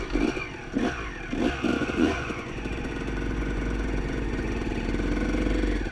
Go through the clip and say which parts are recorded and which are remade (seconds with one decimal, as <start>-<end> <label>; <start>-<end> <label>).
0.0-1.8 recorded; 1.8-4.7 remade; 4.7-5.9 recorded